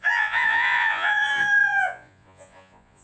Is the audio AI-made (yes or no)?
yes